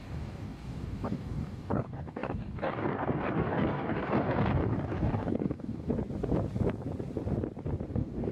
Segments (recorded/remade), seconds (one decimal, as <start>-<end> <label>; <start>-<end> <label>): 0.0-5.9 remade; 5.9-7.9 recorded; 7.9-8.3 remade

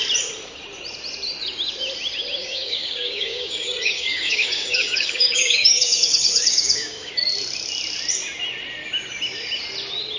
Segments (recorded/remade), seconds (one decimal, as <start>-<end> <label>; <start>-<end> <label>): 0.0-2.4 recorded; 2.4-7.1 remade; 7.1-10.2 recorded

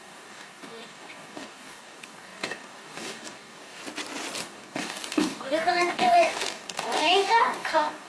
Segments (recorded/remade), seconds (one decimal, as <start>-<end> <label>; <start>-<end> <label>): 0.0-3.8 remade; 3.8-4.4 recorded; 4.4-8.1 remade

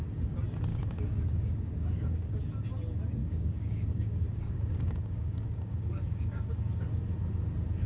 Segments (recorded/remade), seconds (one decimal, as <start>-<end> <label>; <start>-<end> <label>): 0.0-0.7 recorded; 0.7-2.4 remade; 2.4-3.2 recorded; 3.2-6.5 remade; 6.5-7.9 recorded

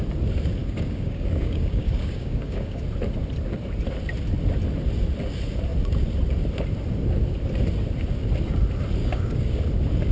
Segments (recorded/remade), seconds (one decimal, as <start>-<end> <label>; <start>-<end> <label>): 0.0-0.6 recorded; 0.6-2.8 remade; 2.8-9.0 recorded; 9.0-9.6 remade; 9.6-10.1 recorded

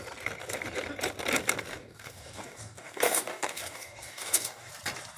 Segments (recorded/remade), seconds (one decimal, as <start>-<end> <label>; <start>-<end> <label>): 0.0-1.7 recorded; 1.7-4.7 remade; 4.7-5.2 recorded